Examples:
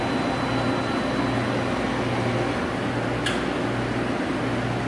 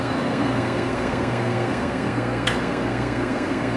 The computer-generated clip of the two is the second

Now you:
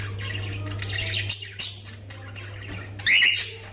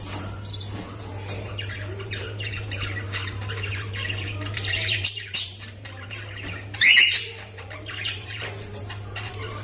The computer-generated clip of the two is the second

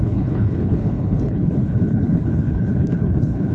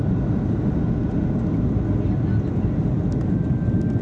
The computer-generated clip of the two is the first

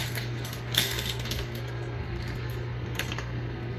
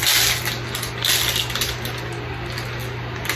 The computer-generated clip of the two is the first